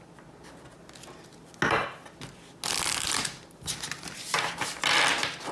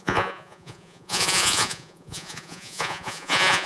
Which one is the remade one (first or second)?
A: second